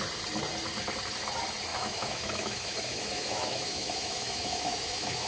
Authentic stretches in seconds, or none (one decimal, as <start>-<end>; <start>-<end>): 0.0-1.7